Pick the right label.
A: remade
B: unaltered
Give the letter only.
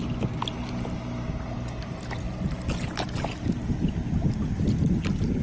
B